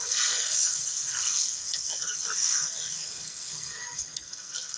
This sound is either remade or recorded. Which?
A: remade